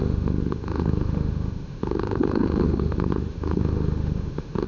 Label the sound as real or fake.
fake